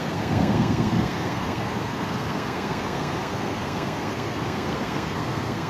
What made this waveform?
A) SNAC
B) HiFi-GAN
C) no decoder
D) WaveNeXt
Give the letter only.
A